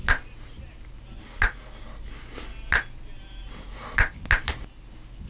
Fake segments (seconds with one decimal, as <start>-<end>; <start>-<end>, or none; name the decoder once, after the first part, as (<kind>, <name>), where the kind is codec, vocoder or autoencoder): none